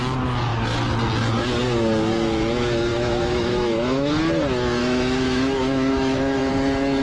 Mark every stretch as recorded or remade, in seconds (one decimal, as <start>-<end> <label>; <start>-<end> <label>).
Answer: 0.0-2.9 recorded; 2.9-4.2 remade; 4.2-4.8 recorded; 4.8-6.5 remade; 6.5-7.0 recorded